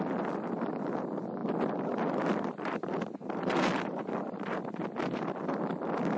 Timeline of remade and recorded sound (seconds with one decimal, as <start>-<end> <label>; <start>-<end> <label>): 0.0-6.2 recorded